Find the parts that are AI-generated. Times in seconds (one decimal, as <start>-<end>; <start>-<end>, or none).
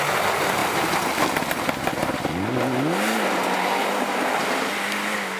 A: 0.6-1.1